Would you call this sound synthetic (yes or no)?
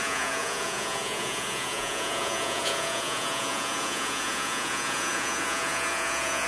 yes